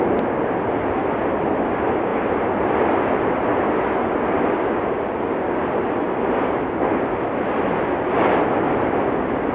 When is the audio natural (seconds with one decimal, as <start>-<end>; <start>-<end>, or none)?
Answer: 0.0-9.5